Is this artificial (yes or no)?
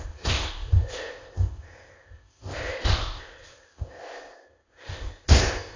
yes